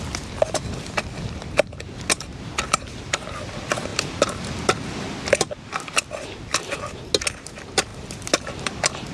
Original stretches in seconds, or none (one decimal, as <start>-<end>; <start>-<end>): 0.0-9.1